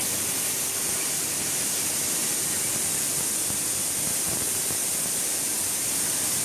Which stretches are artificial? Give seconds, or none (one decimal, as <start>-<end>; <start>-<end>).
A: 1.0-3.0